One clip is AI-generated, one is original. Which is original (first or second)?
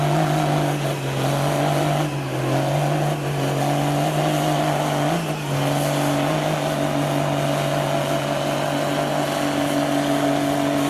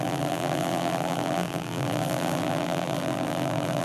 first